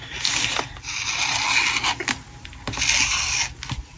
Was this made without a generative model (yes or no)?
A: yes